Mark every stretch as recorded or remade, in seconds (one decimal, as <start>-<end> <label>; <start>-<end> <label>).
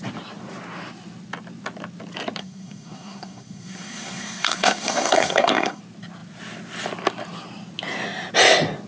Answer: 0.0-2.4 recorded; 2.4-5.8 remade; 5.8-8.9 recorded